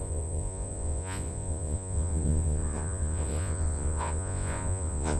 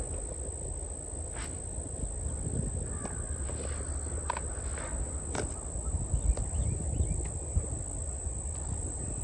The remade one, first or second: first